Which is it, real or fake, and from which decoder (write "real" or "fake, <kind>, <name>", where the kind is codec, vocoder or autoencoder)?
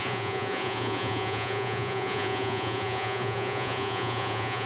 fake, vocoder, Vocos